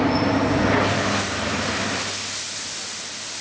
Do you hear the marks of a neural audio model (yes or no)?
no